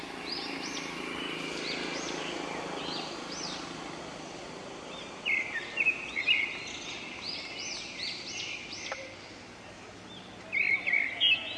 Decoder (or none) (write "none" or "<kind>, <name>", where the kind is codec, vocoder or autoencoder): none